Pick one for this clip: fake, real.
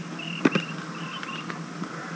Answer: real